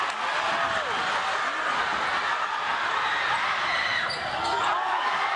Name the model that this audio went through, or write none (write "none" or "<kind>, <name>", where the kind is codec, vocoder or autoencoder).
none